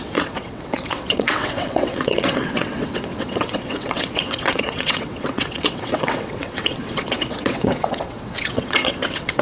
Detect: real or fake fake